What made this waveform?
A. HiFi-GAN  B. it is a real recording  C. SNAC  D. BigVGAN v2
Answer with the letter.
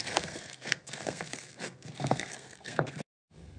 C